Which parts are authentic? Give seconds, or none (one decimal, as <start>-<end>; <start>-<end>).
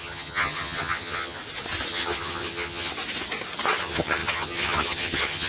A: 1.4-1.9; 2.9-3.8